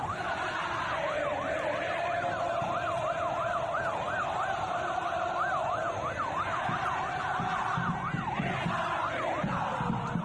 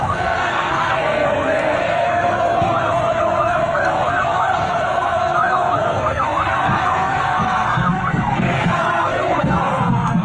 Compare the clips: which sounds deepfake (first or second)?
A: second